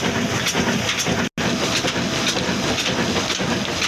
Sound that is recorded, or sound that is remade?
recorded